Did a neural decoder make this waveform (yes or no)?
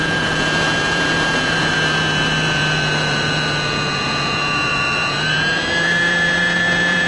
yes